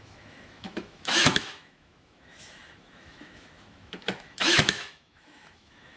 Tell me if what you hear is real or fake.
fake